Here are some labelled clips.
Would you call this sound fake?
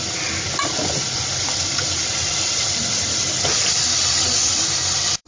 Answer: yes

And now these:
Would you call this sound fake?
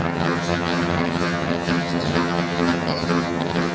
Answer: yes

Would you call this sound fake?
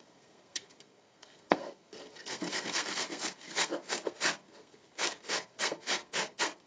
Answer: yes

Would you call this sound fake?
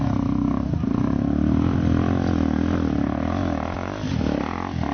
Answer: no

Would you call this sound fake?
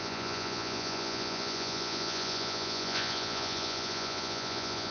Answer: yes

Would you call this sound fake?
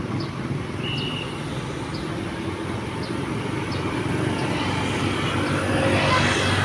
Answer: no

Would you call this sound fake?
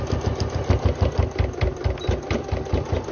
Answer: no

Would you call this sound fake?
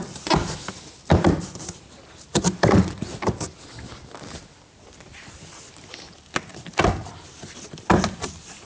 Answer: no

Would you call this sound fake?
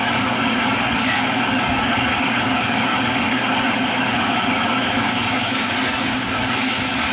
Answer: yes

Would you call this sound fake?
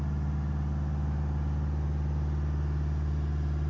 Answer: no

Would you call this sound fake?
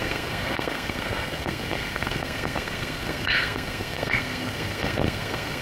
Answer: yes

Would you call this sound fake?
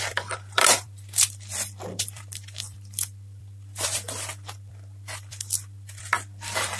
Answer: yes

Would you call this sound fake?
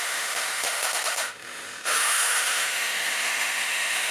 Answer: yes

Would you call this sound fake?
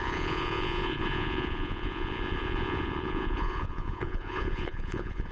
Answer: yes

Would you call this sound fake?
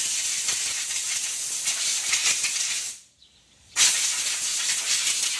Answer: no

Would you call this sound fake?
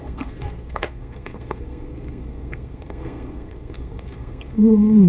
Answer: yes